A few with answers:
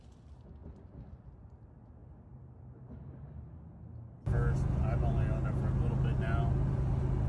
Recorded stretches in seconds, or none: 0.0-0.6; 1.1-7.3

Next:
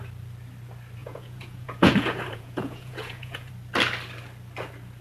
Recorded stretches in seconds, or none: 0.0-1.0; 3.5-5.0

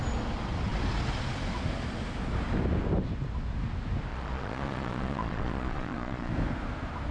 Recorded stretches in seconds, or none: 0.0-4.1; 6.3-7.1

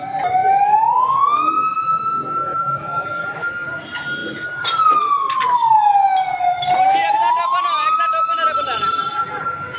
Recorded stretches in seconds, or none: 0.0-2.5; 3.5-9.8

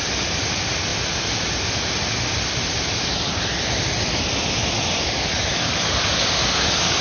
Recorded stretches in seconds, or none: 0.0-5.3

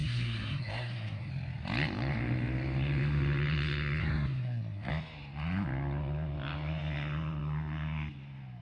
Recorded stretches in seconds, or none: 1.3-4.0; 4.9-8.6